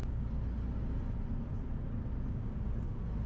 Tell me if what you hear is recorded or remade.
recorded